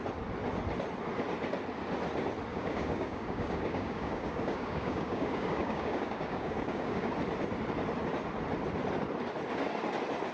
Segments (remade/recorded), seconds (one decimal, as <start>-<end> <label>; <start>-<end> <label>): 0.0-2.5 recorded; 2.5-7.1 remade; 7.1-10.3 recorded